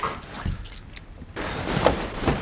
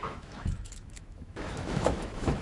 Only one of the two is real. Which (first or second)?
first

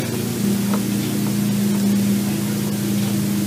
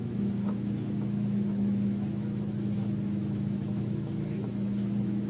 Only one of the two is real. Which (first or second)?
first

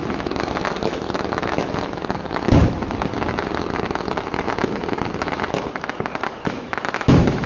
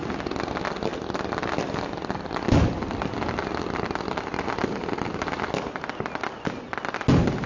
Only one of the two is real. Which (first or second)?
second